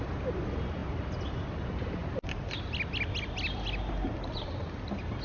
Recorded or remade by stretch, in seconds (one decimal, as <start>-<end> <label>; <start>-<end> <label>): 0.0-5.2 recorded